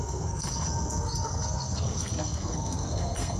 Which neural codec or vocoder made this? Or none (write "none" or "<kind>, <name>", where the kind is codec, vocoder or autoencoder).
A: codec, SNAC